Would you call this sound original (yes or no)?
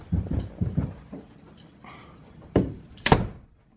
no